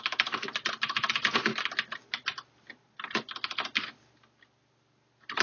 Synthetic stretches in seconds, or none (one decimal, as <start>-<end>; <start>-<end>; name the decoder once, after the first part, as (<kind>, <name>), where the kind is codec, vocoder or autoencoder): none